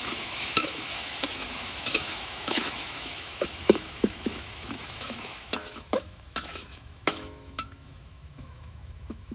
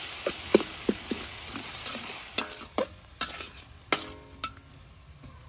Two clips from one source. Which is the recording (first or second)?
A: second